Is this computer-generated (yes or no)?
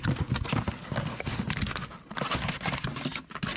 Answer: no